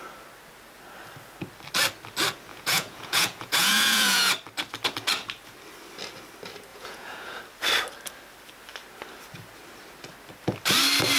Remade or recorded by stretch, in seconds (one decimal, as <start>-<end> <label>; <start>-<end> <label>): 0.0-2.5 recorded; 2.5-4.3 remade; 4.3-6.7 recorded; 6.7-7.4 remade; 7.4-11.2 recorded